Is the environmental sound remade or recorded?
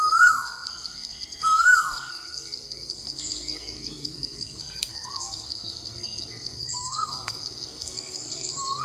remade